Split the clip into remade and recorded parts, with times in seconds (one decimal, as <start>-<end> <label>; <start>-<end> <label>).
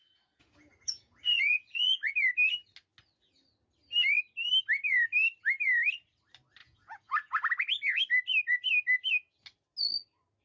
0.0-2.1 remade; 2.1-6.6 recorded; 6.6-7.5 remade; 7.5-10.4 recorded